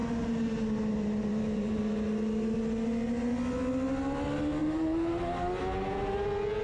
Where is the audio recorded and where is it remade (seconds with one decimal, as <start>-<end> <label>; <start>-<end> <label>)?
0.0-1.8 remade; 1.8-4.6 recorded; 4.6-5.6 remade; 5.6-6.6 recorded